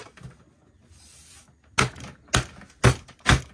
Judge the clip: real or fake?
real